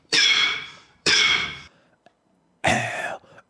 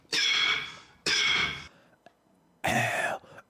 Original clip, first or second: second